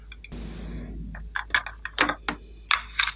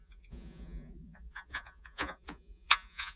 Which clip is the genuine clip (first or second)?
first